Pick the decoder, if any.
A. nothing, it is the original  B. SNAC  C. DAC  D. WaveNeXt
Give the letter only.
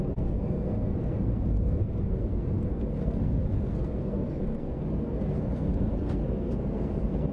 B